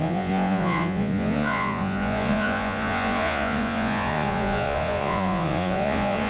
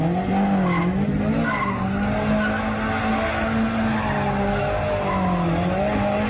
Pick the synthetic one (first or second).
first